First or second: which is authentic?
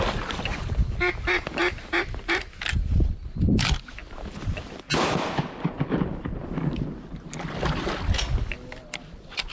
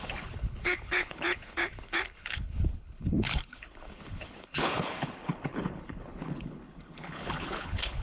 first